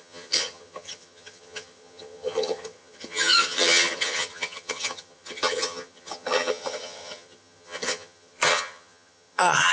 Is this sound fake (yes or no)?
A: yes